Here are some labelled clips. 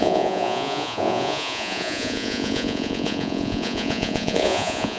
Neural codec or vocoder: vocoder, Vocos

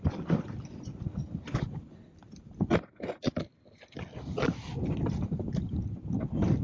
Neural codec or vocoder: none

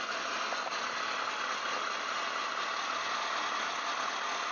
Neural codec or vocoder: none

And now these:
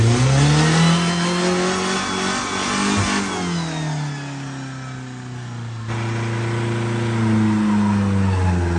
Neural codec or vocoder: none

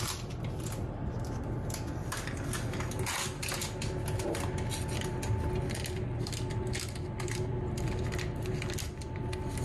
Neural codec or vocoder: none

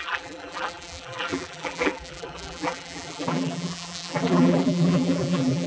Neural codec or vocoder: vocoder, BigVGAN v2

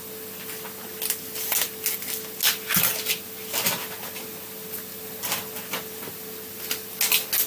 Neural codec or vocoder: none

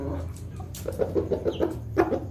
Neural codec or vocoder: none